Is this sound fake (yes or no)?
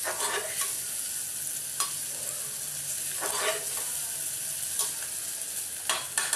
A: no